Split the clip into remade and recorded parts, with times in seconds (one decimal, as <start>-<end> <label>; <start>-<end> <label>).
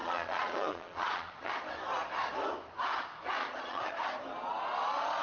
0.0-1.5 remade; 1.5-3.4 recorded; 3.4-3.9 remade; 3.9-5.2 recorded